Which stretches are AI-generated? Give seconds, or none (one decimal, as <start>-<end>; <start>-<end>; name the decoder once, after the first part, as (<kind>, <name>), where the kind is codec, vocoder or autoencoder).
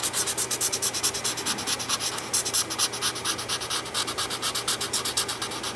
none